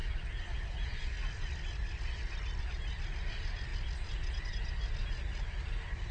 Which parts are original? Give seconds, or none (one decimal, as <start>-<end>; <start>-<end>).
0.0-6.1